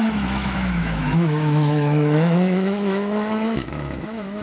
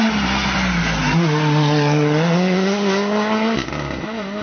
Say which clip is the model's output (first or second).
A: first